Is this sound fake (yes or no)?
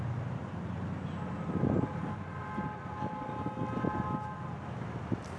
no